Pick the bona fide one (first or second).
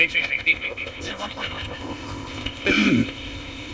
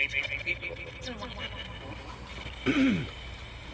second